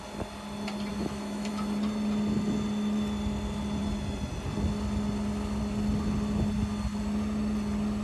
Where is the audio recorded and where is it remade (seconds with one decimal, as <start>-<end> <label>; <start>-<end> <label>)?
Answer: 0.0-0.9 recorded; 0.9-1.5 remade; 1.5-8.0 recorded